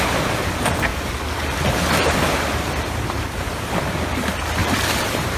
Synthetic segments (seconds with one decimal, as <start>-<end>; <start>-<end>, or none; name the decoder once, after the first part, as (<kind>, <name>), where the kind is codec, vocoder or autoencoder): 0.9-4.1 (vocoder, BigVGAN v2); 4.6-5.4